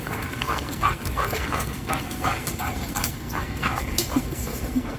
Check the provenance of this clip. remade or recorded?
remade